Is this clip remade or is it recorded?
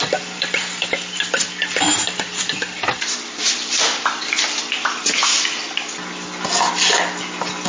recorded